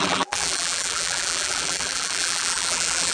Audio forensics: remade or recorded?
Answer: remade